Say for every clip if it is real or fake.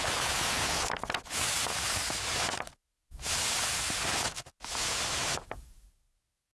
real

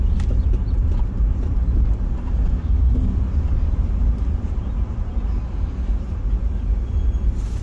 real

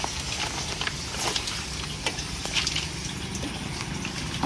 real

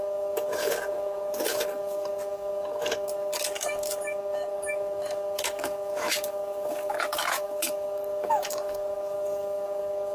fake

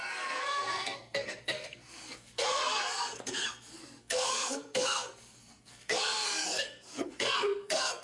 fake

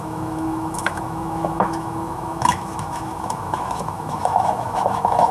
fake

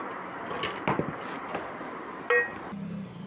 real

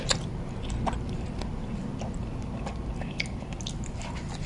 real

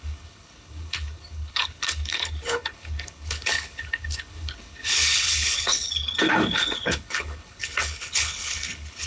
fake